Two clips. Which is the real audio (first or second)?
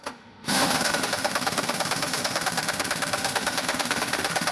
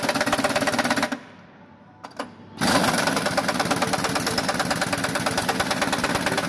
second